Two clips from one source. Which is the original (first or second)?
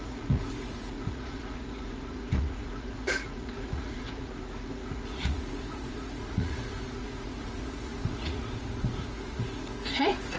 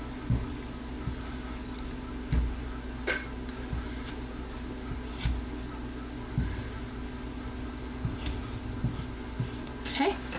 second